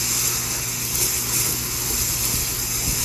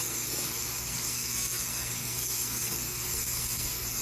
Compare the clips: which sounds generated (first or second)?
second